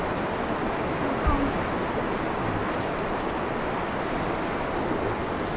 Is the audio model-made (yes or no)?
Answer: no